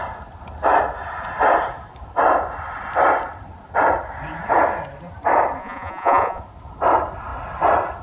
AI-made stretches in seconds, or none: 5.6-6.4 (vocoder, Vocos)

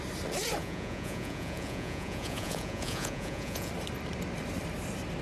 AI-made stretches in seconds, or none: 0.6-3.7 (vocoder, Vocos)

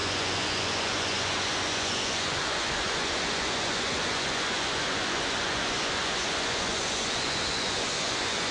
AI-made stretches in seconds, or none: 0.0-8.5 (vocoder, Vocos)

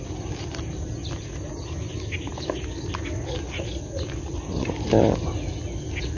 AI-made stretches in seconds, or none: none

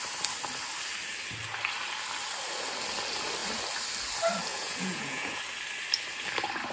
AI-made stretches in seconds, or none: 4.5-5.4 (vocoder, Vocos)

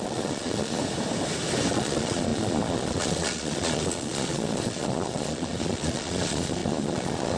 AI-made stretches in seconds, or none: 0.0-0.8 (vocoder, Vocos); 1.7-7.4

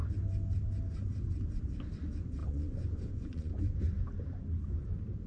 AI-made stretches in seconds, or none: 2.4-3.8 (vocoder, Vocos)